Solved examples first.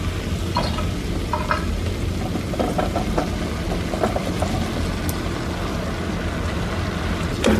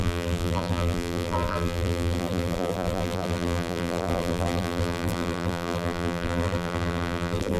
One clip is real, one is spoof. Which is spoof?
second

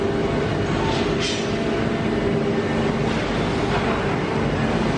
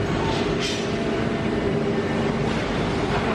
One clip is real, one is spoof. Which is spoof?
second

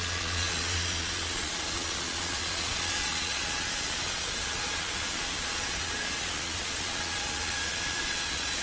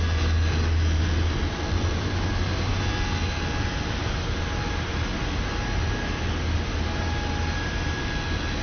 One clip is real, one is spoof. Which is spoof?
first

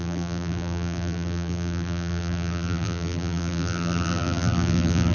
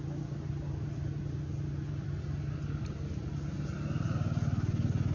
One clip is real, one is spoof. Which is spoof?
first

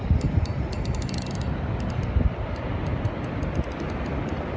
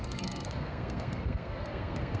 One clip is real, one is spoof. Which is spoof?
second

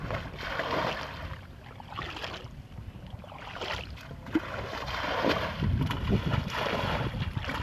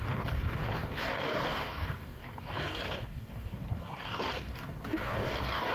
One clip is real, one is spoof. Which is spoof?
second